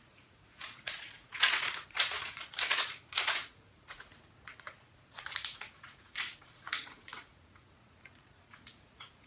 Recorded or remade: remade